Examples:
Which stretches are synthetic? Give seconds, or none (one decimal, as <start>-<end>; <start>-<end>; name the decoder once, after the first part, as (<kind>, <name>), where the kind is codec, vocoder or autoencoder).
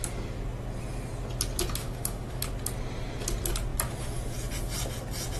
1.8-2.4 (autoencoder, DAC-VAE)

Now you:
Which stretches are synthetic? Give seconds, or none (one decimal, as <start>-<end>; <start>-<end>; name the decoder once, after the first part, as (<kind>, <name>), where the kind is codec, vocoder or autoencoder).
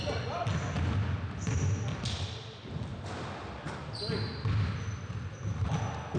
none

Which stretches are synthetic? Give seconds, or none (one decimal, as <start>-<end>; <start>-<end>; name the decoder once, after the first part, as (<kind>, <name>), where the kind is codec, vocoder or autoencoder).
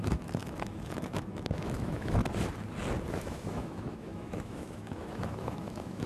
0.0-2.2 (autoencoder, DAC-VAE); 3.1-6.1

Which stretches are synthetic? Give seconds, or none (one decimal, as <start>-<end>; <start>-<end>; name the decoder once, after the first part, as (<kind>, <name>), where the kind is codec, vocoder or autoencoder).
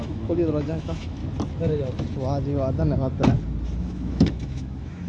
0.0-1.2 (autoencoder, DAC-VAE); 3.8-5.1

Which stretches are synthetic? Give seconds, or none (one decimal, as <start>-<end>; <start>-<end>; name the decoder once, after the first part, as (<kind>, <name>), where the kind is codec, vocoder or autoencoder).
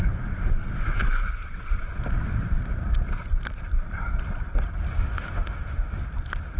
4.9-6.0 (autoencoder, DAC-VAE)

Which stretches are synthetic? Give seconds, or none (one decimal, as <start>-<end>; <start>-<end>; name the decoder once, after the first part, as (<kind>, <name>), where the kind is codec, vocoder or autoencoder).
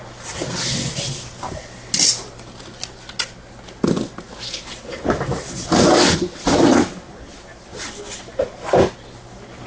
none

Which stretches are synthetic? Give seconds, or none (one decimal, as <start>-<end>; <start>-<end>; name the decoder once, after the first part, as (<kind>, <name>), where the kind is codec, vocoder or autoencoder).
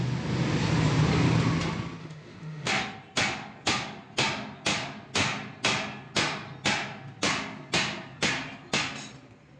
2.0-2.7 (autoencoder, DAC-VAE)